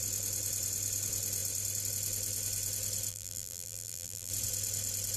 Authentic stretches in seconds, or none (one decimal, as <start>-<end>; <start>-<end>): 0.0-3.1; 4.3-5.2